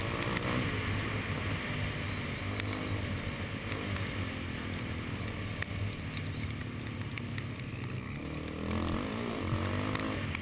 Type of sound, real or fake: real